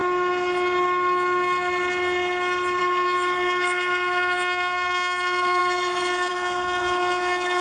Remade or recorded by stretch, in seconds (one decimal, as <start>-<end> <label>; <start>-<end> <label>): 0.0-2.8 recorded; 2.8-7.6 remade

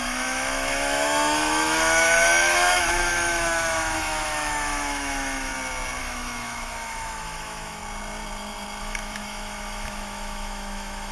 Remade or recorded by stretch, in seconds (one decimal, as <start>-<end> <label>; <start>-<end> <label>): 0.0-5.5 remade; 5.5-6.0 recorded; 6.0-7.8 remade; 7.8-8.8 recorded; 8.8-11.1 remade

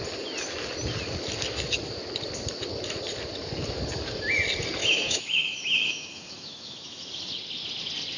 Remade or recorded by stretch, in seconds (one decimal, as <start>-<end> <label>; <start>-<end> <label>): 0.0-4.8 recorded; 4.8-7.1 remade; 7.1-8.2 recorded

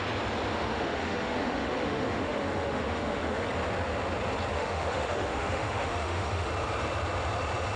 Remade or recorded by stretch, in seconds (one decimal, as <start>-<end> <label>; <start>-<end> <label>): 0.0-0.5 recorded; 0.5-3.5 remade; 3.5-4.5 recorded; 4.5-6.5 remade; 6.5-7.8 recorded

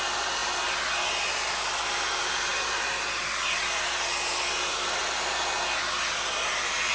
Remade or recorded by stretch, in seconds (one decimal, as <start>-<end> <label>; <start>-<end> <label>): 0.0-6.9 recorded

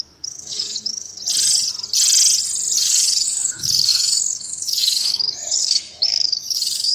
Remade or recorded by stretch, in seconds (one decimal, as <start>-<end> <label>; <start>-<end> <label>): 0.0-1.2 remade; 1.2-2.8 recorded; 2.8-6.9 remade

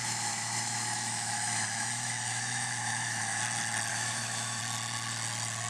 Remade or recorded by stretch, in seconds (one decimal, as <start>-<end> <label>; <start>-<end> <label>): 0.0-3.4 remade; 3.4-3.9 recorded; 3.9-4.6 remade; 4.6-5.7 recorded

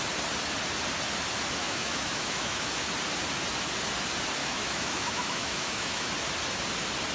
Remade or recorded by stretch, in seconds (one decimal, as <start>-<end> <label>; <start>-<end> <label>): 0.0-1.6 recorded; 1.6-2.9 remade; 2.9-4.4 recorded; 4.4-6.1 remade; 6.1-7.1 recorded